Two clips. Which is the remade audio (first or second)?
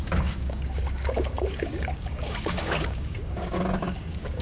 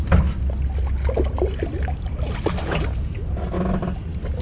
first